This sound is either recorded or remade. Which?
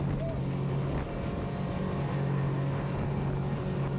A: recorded